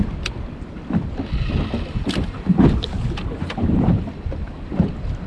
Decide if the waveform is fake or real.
real